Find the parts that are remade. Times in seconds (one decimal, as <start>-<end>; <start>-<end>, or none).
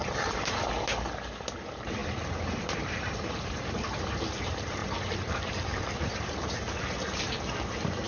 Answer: 0.0-8.1